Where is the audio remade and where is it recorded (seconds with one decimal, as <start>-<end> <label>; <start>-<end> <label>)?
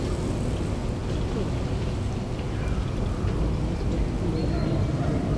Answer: 0.0-5.4 recorded